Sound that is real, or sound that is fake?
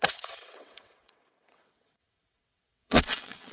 fake